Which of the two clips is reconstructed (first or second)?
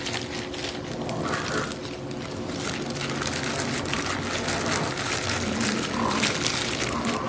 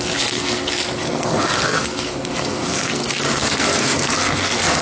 second